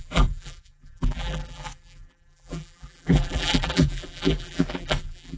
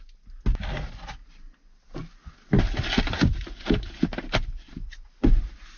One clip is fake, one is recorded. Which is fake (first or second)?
first